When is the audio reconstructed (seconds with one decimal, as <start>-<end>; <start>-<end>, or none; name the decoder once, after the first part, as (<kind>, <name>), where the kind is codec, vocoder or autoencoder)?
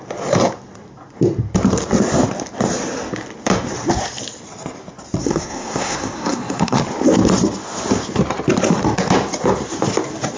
5.2-6.8 (codec, SNAC)